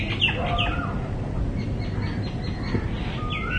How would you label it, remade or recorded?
recorded